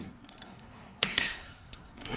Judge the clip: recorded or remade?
remade